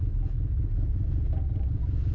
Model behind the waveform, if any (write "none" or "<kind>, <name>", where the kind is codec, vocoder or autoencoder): none